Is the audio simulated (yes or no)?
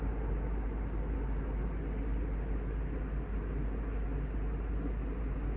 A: no